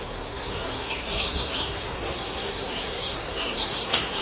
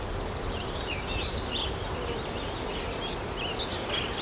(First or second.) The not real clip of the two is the first